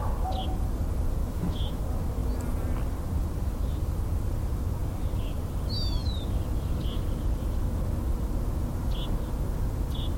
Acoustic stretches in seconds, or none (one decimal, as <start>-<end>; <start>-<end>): 0.0-1.2; 1.8-10.2